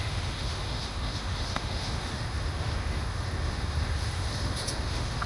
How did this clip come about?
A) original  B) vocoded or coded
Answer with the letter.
B